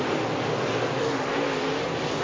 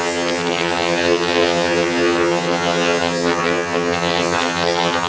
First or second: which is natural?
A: first